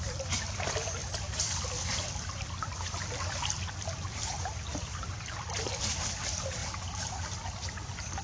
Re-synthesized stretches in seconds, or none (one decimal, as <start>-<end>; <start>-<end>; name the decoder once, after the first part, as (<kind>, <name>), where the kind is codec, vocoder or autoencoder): none